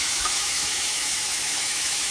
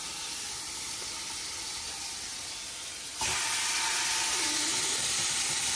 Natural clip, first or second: second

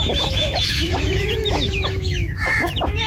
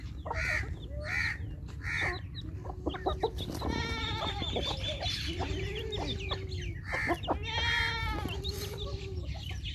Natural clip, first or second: second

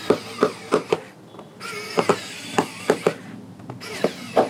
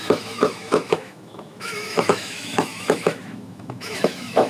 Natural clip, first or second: first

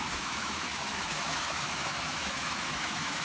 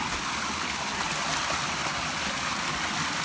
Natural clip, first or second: second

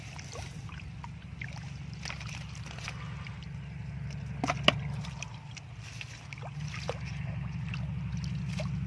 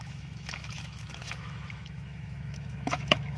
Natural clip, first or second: first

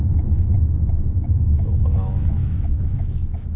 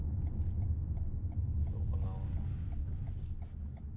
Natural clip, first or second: second